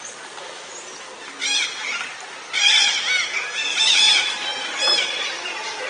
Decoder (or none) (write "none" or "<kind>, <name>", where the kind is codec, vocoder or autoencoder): none